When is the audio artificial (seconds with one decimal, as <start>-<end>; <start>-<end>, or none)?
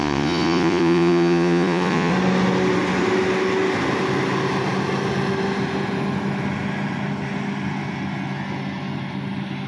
0.0-2.1